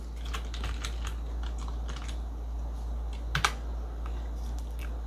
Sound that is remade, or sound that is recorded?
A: recorded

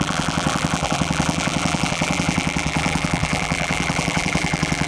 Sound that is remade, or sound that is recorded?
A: remade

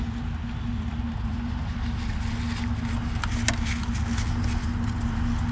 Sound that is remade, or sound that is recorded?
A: recorded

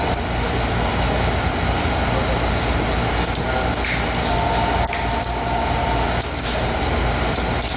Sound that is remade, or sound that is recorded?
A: recorded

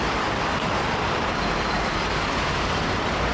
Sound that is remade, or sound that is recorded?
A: remade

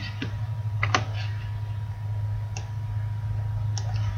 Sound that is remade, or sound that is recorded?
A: recorded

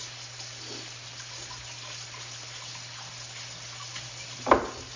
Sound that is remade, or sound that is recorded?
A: recorded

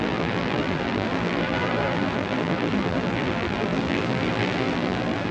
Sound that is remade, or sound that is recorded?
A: remade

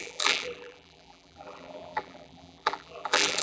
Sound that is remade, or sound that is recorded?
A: remade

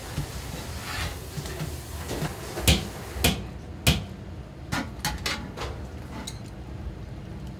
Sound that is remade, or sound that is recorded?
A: recorded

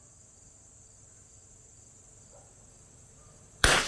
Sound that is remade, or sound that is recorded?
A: remade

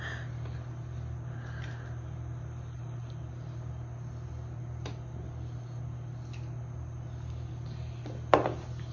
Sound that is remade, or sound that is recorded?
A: recorded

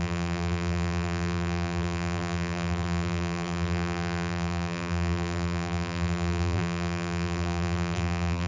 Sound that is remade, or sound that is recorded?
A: remade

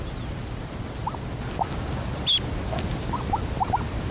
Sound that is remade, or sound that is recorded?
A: recorded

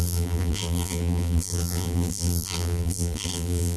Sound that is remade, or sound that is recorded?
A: remade